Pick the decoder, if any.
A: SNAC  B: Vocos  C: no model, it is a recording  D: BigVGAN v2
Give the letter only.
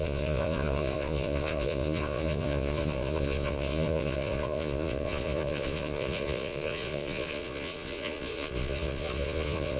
B